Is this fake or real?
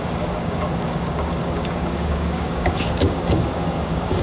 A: fake